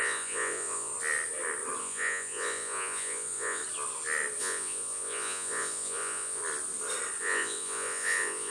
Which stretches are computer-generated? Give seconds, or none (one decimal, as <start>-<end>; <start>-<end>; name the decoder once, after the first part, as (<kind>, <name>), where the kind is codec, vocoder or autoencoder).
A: 0.0-0.9 (vocoder, Vocos); 1.8-3.6; 4.4-6.4; 7.2-8.5